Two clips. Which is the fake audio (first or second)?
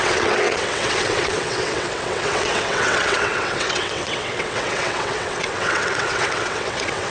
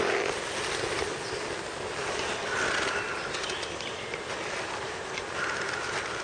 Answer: first